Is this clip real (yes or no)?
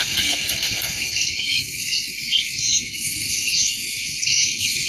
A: no